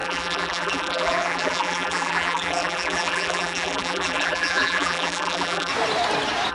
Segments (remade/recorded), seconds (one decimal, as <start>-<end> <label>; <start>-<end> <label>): 0.0-5.7 remade; 5.7-6.5 recorded